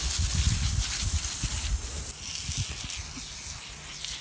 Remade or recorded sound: recorded